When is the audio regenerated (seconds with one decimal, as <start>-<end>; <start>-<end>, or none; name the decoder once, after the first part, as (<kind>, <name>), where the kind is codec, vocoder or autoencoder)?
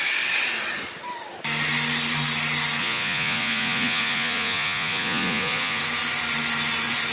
2.8-5.8 (vocoder, Vocos)